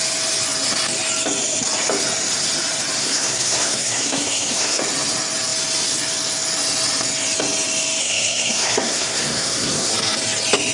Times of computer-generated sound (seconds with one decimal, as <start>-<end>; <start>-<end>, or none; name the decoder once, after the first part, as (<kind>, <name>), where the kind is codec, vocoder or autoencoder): 3.0-4.8 (codec, SNAC); 8.0-9.9

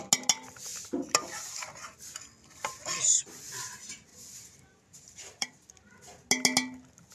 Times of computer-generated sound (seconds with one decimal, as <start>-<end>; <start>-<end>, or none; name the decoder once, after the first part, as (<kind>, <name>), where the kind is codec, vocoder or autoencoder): 2.8-3.3 (vocoder, BigVGAN v2); 4.1-5.7

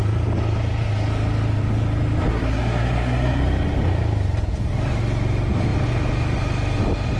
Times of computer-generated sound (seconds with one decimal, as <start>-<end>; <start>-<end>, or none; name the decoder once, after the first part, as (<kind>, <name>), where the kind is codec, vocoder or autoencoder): 2.3-3.4 (codec, SNAC)

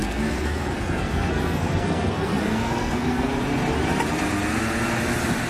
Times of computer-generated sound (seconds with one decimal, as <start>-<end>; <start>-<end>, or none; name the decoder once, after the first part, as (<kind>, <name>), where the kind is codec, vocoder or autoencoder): 0.0-3.3 (codec, SNAC)

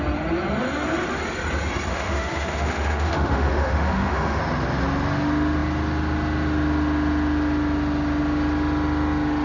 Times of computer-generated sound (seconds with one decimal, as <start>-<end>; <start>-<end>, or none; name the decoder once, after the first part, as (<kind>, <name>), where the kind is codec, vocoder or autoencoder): 1.9-4.4 (autoencoder, DAC-VAE)

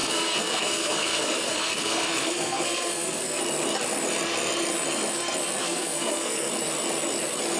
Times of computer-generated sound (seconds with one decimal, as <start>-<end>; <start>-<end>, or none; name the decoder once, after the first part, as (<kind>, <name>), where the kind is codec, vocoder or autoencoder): 0.0-3.4 (codec, SNAC); 5.6-6.5

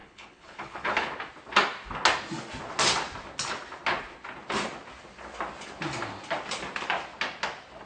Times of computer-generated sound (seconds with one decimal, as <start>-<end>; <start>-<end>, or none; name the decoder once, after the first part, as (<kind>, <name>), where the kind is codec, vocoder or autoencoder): 0.0-1.1 (codec, HILCodec)